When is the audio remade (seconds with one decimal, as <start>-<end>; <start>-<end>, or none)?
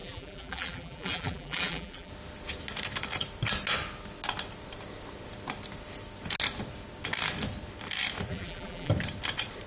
0.0-2.1; 8.3-8.9